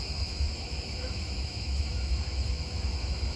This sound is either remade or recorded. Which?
remade